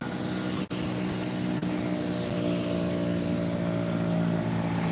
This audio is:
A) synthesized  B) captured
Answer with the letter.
B